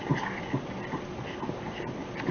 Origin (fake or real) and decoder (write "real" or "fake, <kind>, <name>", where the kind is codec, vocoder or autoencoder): fake, vocoder, BigVGAN v2